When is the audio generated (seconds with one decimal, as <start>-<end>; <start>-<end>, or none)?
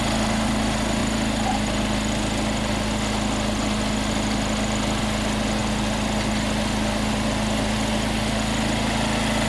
none